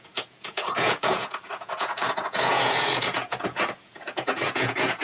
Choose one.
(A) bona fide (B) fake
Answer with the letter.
B